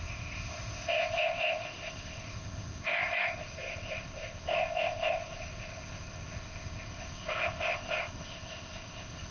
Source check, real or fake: fake